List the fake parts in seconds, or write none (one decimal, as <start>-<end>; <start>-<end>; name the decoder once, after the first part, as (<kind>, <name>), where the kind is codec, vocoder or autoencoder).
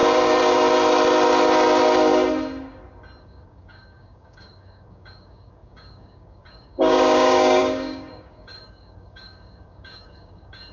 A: 3.2-10.7 (codec, DAC)